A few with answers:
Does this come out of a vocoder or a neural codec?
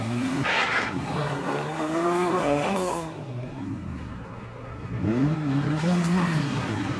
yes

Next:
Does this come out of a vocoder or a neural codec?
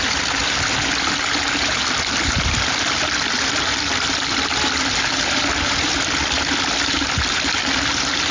no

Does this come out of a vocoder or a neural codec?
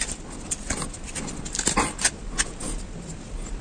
no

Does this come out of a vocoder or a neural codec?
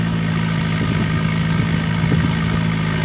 no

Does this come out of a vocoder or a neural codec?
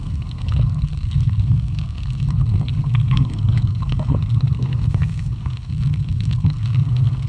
yes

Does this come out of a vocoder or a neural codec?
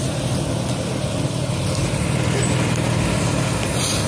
no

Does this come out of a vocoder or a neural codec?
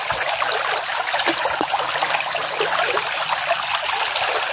no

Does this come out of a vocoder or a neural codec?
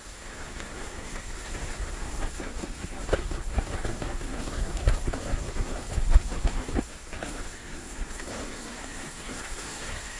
yes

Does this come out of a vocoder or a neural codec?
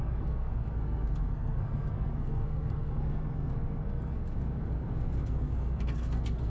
yes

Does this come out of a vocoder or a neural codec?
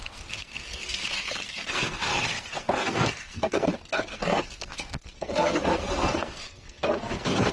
yes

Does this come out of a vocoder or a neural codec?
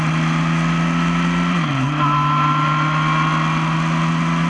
no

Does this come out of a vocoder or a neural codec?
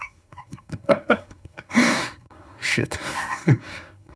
yes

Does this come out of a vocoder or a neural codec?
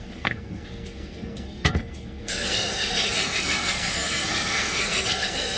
yes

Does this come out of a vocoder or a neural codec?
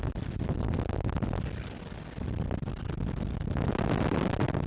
no